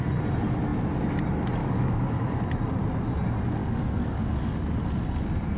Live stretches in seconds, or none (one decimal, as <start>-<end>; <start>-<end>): 0.0-1.6; 2.4-3.6; 4.6-5.6